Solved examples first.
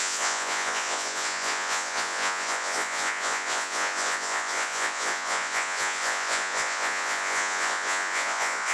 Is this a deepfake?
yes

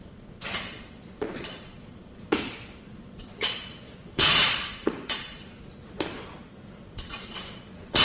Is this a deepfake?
yes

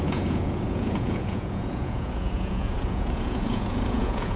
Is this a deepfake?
yes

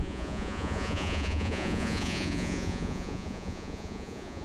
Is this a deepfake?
yes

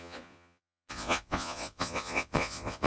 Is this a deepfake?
yes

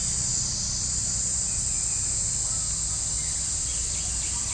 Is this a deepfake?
no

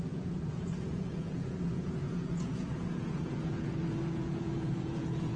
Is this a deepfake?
yes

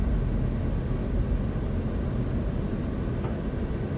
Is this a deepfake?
no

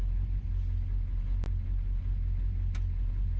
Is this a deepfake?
no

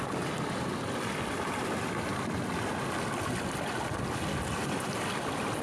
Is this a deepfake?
no